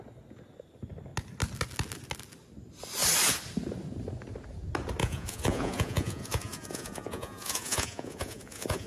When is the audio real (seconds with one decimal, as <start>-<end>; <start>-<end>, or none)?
0.0-5.0